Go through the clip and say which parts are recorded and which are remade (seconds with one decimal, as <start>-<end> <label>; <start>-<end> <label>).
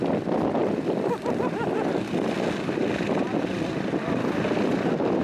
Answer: 0.0-5.2 recorded